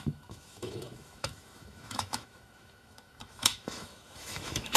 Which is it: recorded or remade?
remade